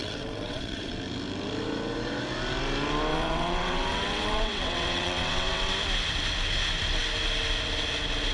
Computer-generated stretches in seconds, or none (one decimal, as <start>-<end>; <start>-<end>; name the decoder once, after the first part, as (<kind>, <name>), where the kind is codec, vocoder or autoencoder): 0.0-0.9 (vocoder, WaveNeXt); 3.1-5.7